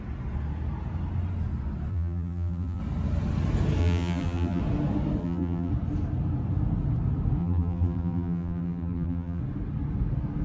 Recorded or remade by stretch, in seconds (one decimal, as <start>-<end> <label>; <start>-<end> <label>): 0.0-1.9 recorded; 1.9-2.8 remade; 2.8-3.8 recorded; 3.8-4.6 remade; 4.6-5.2 recorded; 5.2-5.7 remade; 5.7-7.4 recorded; 7.4-9.4 remade; 9.4-10.4 recorded

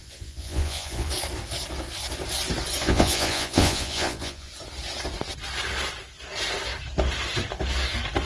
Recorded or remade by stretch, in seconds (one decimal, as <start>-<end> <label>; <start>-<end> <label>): 0.0-1.1 remade; 1.1-2.8 recorded; 2.8-4.5 remade; 4.5-8.3 recorded

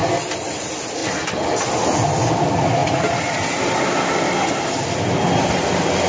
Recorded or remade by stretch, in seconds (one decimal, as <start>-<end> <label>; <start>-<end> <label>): 0.0-6.1 recorded

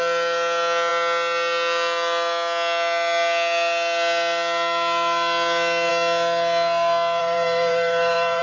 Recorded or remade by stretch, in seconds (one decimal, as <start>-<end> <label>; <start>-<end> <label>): 0.0-7.2 recorded; 7.2-8.4 remade

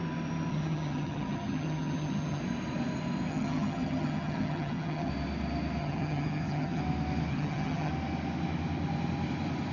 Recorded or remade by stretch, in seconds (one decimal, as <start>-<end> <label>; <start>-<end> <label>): 0.0-0.5 recorded; 0.5-2.4 remade; 2.4-3.3 recorded; 3.3-5.1 remade; 5.1-5.8 recorded; 5.8-6.8 remade; 6.8-7.3 recorded; 7.3-7.9 remade; 7.9-9.7 recorded

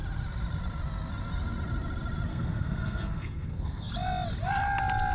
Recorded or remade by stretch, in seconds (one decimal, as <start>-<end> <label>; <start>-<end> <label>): 0.0-2.3 recorded; 2.3-3.9 remade; 3.9-5.1 recorded

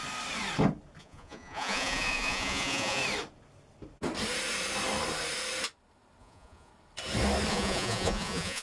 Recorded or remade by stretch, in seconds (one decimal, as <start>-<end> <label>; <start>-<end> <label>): 0.0-1.0 recorded; 1.0-3.0 remade; 3.0-6.2 recorded; 6.2-6.7 remade; 6.7-7.5 recorded; 7.5-8.6 remade